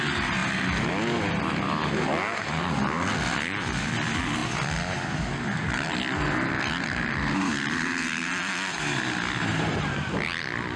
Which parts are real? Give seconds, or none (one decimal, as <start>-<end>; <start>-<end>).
0.0-10.8